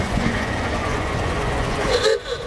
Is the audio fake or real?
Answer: fake